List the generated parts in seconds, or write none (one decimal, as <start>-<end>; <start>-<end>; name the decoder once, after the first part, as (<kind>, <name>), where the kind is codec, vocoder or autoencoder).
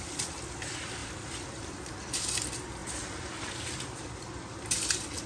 1.0-1.9 (vocoder, BigVGAN v2); 2.8-4.1